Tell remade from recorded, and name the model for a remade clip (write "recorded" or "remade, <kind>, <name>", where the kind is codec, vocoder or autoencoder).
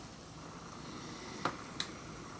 recorded